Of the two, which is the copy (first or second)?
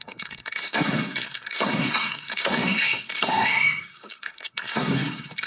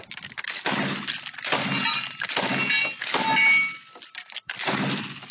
first